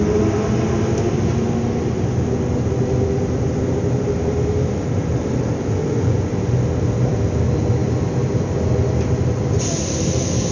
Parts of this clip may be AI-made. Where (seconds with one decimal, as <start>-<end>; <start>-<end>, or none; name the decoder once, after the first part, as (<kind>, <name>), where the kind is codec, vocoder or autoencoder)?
5.8-6.3 (vocoder, Vocos)

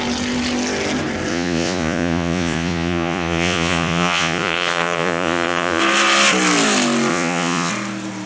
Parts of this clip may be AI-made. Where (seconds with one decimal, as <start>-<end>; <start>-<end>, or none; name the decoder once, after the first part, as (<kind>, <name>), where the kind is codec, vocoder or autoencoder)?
1.3-5.8 (vocoder, Vocos); 7.1-7.7

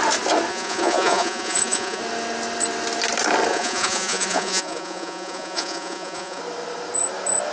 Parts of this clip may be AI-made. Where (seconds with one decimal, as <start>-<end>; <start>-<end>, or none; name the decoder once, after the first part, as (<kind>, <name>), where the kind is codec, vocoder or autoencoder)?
0.5-2.0 (vocoder, Vocos); 3.5-6.4

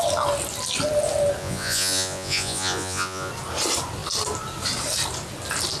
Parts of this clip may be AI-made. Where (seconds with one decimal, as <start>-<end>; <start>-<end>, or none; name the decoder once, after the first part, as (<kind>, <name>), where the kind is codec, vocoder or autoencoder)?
1.4-3.3 (vocoder, Vocos)